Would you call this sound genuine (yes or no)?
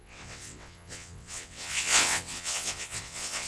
no